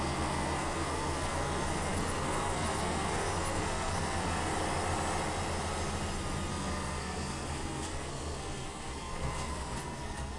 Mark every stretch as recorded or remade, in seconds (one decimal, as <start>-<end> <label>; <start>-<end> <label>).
0.0-4.5 remade; 4.5-6.5 recorded; 6.5-10.4 remade